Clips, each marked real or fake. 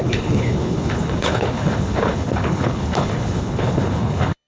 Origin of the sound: fake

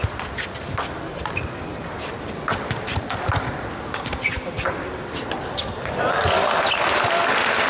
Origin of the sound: real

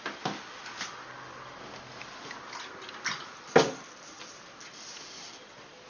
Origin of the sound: real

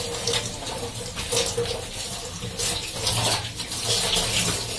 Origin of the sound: real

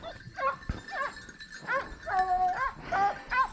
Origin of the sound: real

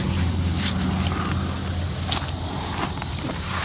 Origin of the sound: real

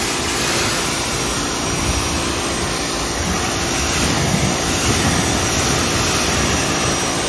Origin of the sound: fake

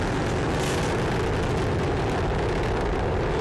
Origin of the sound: real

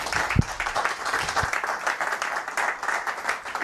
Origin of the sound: real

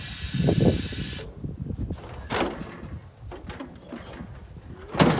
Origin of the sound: real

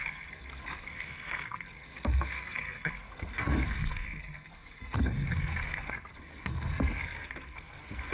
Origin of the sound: fake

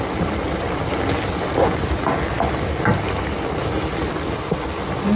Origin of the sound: real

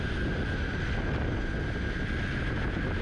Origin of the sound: real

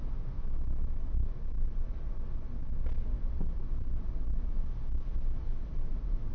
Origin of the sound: real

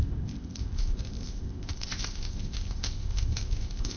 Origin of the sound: fake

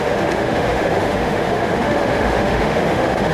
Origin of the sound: fake